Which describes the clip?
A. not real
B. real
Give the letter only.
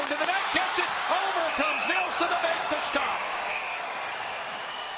A